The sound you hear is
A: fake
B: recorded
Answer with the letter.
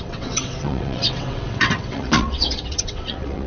A